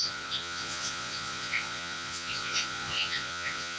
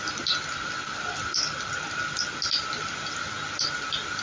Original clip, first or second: second